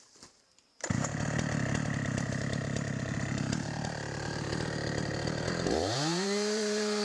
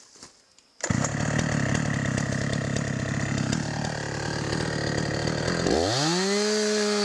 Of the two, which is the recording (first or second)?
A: second